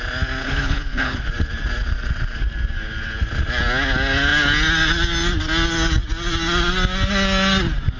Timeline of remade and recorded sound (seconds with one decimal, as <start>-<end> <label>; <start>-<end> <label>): 0.0-0.4 recorded; 0.4-1.2 remade; 1.2-8.0 recorded